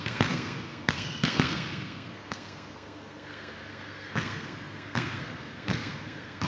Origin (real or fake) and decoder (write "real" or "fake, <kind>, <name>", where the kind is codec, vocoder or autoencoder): fake, codec, SNAC